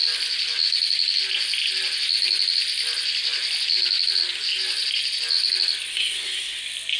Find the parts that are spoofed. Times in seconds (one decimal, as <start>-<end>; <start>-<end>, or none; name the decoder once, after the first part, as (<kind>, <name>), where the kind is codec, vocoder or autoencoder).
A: 5.9-6.6 (codec, SNAC)